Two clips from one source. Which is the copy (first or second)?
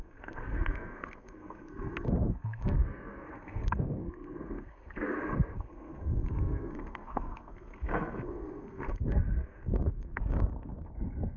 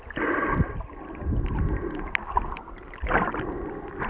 first